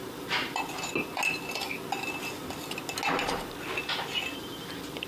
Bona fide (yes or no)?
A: yes